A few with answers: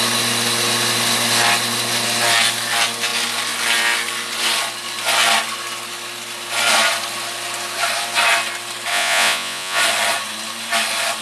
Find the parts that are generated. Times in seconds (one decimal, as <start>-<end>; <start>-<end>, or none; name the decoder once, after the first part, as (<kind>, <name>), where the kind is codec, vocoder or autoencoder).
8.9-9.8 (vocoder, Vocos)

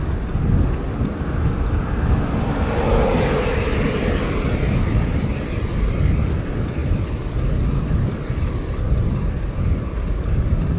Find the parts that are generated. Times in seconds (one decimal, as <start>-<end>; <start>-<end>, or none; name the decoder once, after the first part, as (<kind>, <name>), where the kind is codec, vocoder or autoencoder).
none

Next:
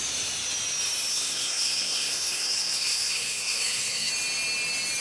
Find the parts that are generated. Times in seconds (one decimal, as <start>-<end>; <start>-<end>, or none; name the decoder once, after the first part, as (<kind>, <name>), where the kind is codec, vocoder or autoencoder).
1.1-4.1 (codec, SNAC)

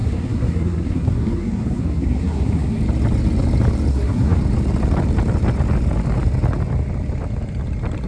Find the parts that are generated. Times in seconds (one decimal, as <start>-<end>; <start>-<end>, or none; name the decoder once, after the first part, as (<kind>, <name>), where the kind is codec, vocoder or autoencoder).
0.0-2.8 (codec, SNAC); 3.9-4.4

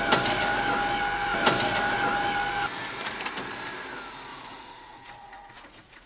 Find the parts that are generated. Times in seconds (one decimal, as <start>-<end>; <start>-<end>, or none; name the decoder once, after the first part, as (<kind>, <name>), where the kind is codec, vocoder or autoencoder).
4.3-6.1 (vocoder, Vocos)

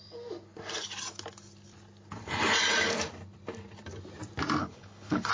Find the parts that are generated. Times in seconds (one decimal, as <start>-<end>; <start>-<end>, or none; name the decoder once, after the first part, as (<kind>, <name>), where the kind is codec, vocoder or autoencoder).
4.6-5.3 (codec, HILCodec)

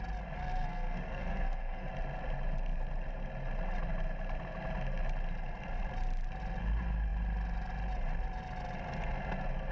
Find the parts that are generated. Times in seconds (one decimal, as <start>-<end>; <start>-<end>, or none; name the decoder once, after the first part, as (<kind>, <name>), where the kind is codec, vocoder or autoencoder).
0.4-1.9 (codec, SNAC)

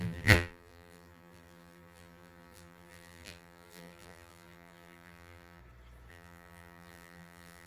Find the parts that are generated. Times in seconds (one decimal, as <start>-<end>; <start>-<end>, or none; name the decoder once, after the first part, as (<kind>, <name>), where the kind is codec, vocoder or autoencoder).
0.0-5.6 (vocoder, BigVGAN v2); 6.1-7.7